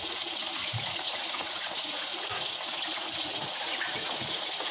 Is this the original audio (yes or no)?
no